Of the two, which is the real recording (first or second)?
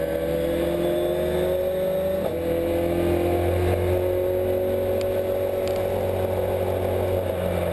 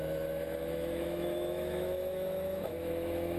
first